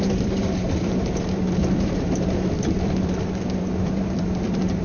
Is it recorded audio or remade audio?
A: remade